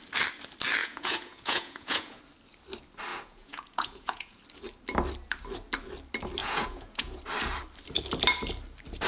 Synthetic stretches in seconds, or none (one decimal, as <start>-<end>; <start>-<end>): 0.8-2.2; 3.1-4.4; 6.4-7.2